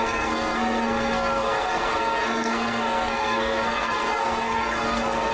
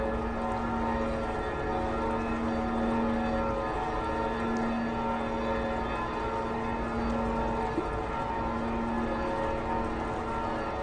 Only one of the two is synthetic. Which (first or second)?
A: first